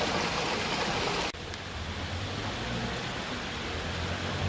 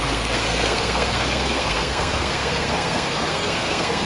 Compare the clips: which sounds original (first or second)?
first